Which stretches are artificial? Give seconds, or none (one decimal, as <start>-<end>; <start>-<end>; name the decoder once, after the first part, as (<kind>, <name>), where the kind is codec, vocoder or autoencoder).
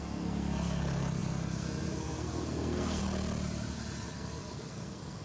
0.0-3.0 (codec, SNAC); 4.1-5.2